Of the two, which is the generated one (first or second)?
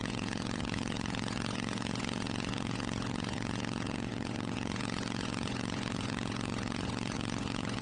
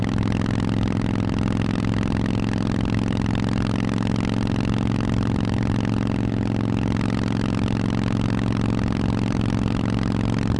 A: first